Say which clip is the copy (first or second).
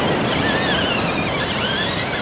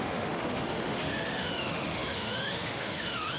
second